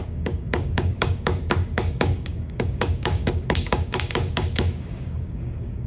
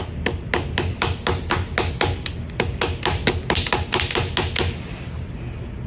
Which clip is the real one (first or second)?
second